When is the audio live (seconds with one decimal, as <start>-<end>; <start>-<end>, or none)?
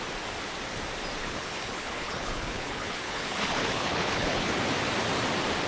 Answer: 0.0-1.2; 4.6-5.7